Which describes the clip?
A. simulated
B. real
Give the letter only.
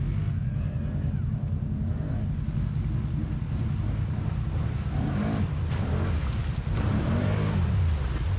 B